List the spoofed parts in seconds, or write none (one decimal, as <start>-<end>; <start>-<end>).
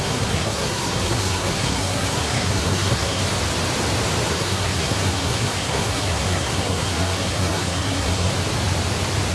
0.0-3.2; 4.3-8.3